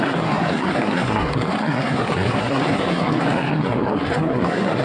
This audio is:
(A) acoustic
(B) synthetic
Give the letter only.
B